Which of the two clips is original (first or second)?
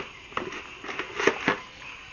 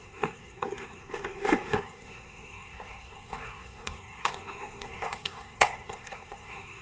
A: first